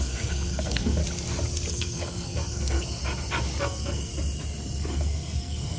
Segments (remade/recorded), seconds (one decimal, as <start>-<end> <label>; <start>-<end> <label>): 0.0-1.0 remade; 1.0-1.7 recorded; 1.7-3.0 remade; 3.0-3.6 recorded; 3.6-4.1 remade; 4.1-4.9 recorded; 4.9-5.8 remade